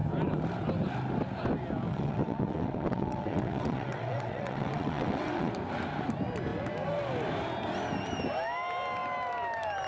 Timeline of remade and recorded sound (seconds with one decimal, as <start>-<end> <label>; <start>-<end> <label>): 0.0-1.9 recorded; 1.9-5.5 remade; 5.5-9.9 recorded

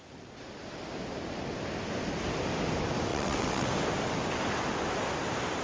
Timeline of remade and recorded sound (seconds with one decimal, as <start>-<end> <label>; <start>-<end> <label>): 0.0-3.1 recorded; 3.1-3.7 remade; 3.7-5.6 recorded

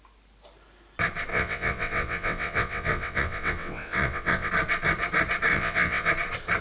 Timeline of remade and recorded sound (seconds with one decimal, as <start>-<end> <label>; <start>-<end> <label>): 0.0-1.3 recorded; 1.3-4.5 remade; 4.5-5.5 recorded; 5.5-6.1 remade; 6.1-6.6 recorded

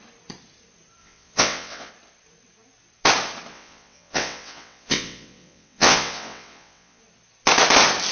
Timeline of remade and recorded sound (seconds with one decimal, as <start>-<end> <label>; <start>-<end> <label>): 0.0-1.0 recorded; 1.0-1.9 remade; 1.9-3.5 recorded; 3.5-7.0 remade; 7.0-8.1 recorded

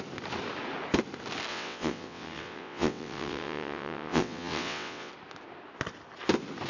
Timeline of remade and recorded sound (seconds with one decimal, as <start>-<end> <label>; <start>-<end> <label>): 0.0-1.5 recorded; 1.5-5.1 remade; 5.1-6.7 recorded

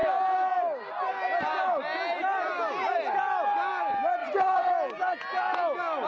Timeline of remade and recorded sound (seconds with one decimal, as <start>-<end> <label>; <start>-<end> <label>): 0.0-4.2 recorded; 4.2-4.7 remade; 4.7-6.1 recorded

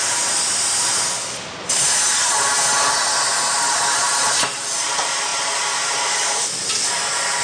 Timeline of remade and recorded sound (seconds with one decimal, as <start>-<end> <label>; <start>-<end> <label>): 0.0-7.4 recorded

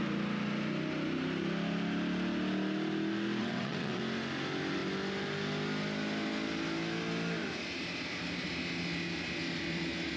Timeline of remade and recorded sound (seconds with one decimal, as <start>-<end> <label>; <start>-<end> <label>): 0.0-3.4 recorded; 3.4-4.0 remade; 4.0-10.2 recorded